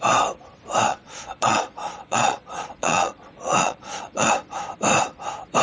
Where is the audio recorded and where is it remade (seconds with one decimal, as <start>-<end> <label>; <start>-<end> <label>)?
0.0-0.9 recorded; 0.9-4.3 remade; 4.3-5.6 recorded